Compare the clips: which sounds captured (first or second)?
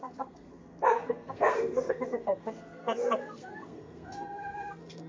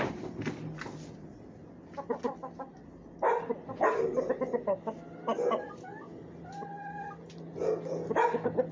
second